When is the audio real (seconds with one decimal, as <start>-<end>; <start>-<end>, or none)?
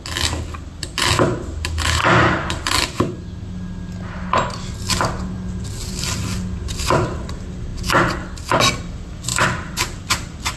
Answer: 0.0-10.6